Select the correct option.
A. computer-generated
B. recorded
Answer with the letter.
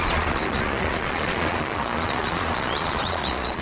A